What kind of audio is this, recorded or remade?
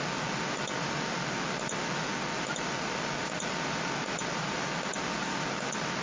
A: recorded